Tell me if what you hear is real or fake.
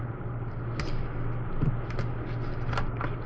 real